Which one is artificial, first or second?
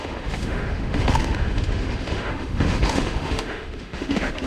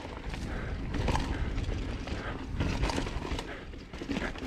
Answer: first